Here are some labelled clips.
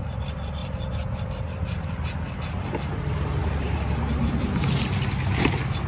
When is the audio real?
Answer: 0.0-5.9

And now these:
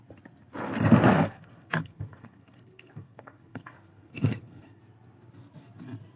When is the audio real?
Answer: 0.0-1.1; 4.8-6.2

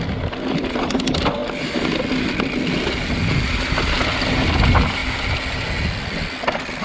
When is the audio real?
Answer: 0.0-6.8